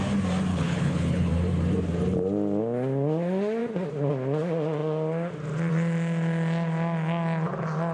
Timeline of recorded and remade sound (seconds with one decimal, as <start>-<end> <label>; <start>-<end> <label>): 0.0-0.5 recorded; 0.5-1.3 remade; 1.3-7.9 recorded